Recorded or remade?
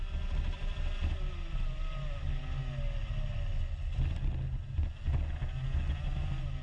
recorded